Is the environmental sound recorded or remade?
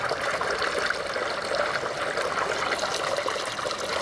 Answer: recorded